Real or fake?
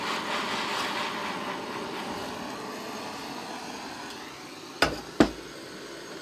real